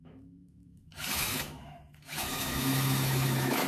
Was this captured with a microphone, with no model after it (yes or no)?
no